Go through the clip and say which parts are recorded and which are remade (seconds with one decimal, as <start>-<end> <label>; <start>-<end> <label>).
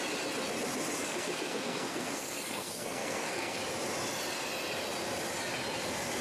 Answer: 0.0-1.0 recorded; 1.0-3.6 remade; 3.6-6.2 recorded